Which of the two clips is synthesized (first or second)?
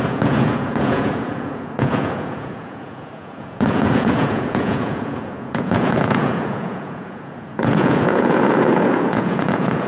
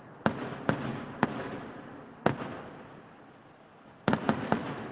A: first